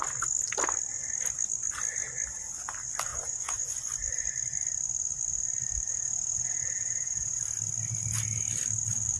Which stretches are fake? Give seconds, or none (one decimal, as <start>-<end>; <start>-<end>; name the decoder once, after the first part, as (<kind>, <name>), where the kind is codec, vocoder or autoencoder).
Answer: 3.1-3.8 (vocoder, Vocos); 5.9-7.4